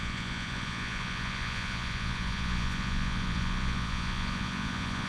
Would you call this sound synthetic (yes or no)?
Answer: yes